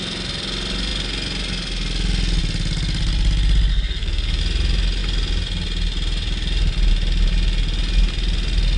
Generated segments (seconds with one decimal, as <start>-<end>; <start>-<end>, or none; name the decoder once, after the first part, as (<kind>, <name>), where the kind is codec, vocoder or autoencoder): 3.7-4.4 (codec, SNAC)